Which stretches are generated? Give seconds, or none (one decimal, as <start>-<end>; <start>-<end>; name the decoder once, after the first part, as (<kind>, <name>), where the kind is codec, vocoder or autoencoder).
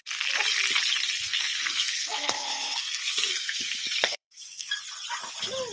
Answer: 1.3-4.7 (codec, SNAC)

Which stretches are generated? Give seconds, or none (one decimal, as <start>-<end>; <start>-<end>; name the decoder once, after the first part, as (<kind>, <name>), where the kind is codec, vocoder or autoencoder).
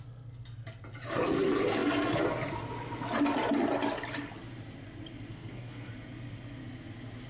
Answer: 5.3-5.9 (codec, SNAC)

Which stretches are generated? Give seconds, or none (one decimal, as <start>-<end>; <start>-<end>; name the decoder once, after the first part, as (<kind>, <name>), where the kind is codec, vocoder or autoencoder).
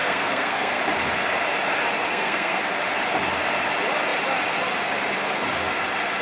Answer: 0.0-0.8 (codec, SNAC); 2.1-2.6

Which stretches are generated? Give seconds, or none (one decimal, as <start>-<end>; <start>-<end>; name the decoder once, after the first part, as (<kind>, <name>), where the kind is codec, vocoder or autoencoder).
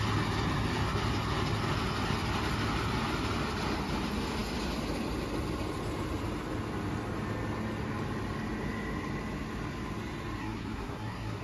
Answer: 10.4-11.4 (codec, SNAC)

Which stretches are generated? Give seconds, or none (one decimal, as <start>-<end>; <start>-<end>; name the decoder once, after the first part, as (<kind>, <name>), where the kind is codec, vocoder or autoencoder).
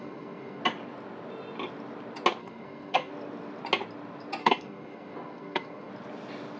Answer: 0.0-0.6 (codec, SNAC); 2.4-3.1; 4.4-5.9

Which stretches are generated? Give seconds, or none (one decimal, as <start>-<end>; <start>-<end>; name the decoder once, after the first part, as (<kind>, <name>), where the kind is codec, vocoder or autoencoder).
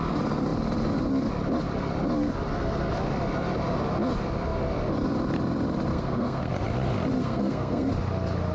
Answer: 5.9-6.5 (codec, SNAC); 7.2-7.9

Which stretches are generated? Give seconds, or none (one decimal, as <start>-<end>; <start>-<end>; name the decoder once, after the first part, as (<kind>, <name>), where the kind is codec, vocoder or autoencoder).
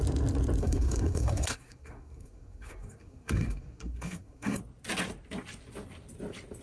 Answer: 0.6-4.6 (codec, SNAC)